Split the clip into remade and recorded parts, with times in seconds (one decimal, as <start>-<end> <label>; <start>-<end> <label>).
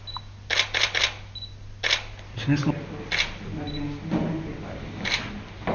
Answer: 0.0-5.7 recorded